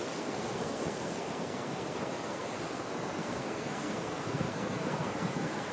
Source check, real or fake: fake